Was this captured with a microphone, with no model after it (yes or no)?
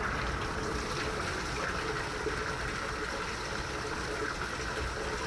yes